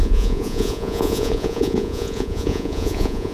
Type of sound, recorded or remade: remade